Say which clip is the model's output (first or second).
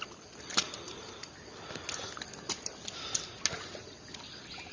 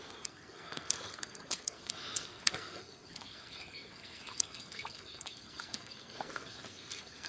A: second